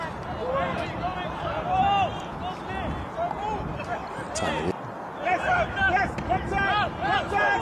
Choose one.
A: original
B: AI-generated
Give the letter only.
A